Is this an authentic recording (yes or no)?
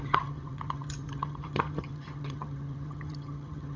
no